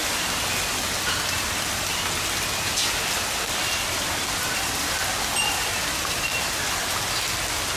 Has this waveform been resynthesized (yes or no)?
no